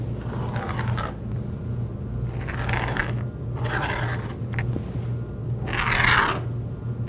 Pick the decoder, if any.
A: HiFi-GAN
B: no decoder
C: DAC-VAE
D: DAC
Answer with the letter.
B